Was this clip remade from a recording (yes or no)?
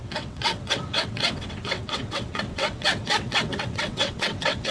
yes